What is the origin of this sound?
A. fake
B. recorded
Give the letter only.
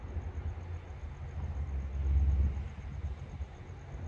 B